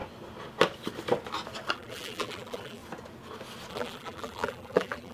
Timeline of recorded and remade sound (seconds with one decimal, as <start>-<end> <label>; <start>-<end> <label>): 0.0-1.7 recorded; 1.7-2.8 remade; 2.8-3.7 recorded; 3.7-5.1 remade